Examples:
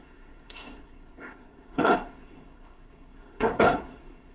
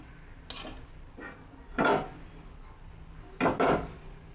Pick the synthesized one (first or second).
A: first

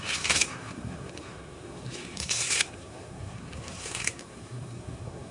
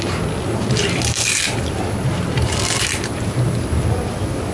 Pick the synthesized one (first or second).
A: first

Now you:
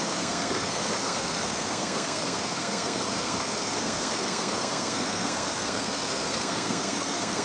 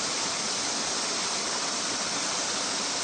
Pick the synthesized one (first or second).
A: first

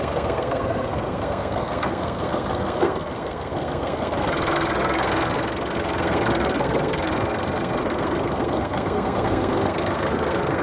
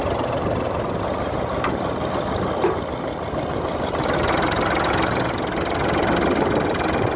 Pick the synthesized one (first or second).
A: first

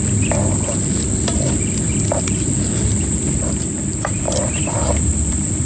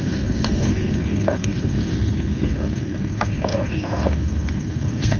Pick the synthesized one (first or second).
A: second